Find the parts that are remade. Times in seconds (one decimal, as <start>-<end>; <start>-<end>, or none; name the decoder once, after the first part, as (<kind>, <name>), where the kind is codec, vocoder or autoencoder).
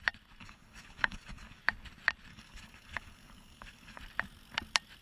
0.4-1.6 (codec, DAC); 2.3-4.0